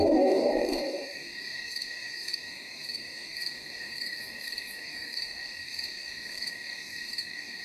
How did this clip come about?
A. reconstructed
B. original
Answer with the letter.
A